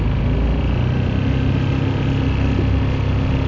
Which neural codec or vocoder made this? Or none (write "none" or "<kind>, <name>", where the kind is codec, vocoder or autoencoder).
none